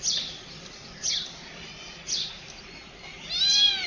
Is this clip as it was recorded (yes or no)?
yes